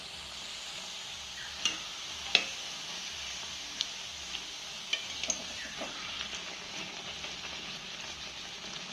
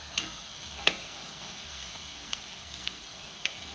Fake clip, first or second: second